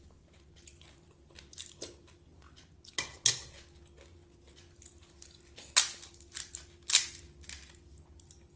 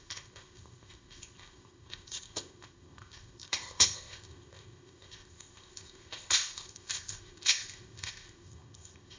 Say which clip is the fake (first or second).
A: second